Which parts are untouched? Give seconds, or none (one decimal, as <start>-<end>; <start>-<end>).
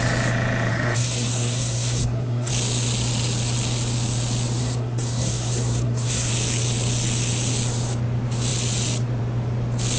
0.0-0.7; 2.5-4.6; 6.3-10.0